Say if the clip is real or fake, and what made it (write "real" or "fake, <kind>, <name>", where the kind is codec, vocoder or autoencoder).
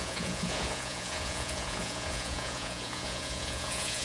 fake, vocoder, Vocos